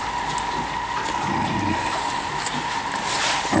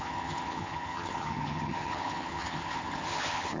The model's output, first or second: second